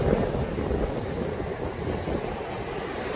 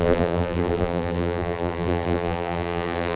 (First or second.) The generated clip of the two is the second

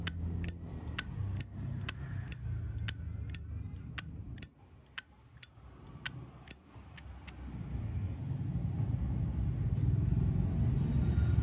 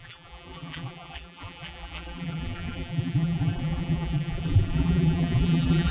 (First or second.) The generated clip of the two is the second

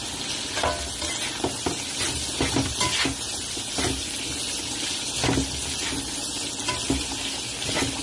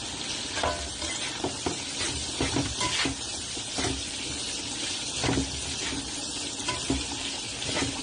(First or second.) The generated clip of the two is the second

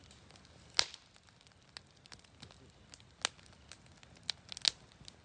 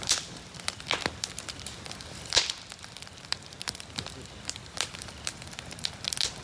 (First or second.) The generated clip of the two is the second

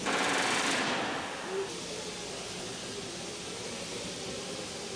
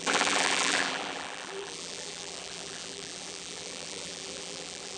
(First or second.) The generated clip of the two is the second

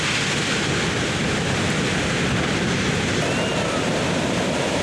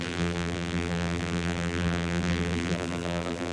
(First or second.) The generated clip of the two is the second